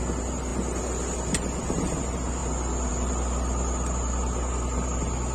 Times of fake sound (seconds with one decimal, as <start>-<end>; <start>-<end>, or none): none